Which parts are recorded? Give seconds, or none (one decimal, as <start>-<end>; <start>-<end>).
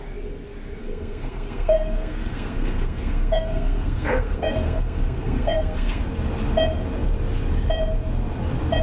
0.0-0.8; 6.0-8.8